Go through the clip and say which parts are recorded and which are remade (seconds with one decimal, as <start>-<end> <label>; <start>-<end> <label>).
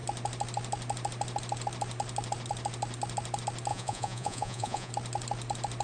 0.0-3.7 recorded; 3.7-4.9 remade; 4.9-5.8 recorded